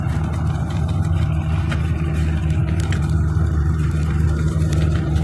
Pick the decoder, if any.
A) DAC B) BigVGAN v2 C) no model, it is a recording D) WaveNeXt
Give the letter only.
B